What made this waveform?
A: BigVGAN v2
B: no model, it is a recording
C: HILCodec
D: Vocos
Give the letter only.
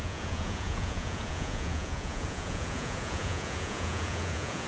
D